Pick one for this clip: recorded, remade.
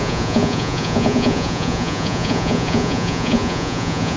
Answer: remade